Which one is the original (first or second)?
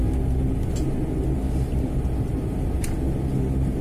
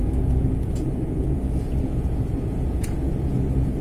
first